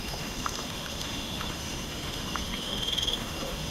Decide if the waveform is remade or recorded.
remade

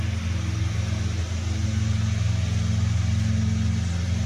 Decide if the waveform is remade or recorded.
recorded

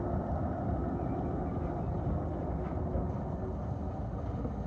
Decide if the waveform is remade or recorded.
recorded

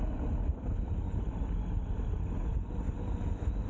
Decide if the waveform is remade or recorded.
recorded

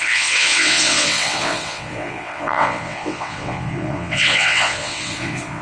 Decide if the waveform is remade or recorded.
remade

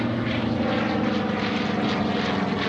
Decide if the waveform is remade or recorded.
recorded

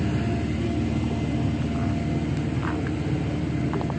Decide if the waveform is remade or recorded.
recorded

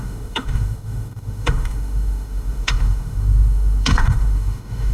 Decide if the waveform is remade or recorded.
remade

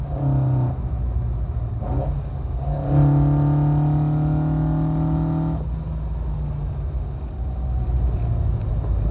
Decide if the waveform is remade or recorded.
recorded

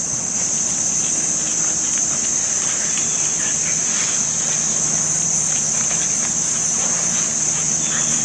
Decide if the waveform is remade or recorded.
recorded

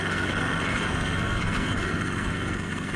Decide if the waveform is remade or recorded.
remade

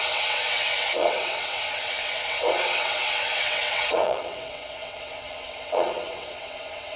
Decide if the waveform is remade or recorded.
remade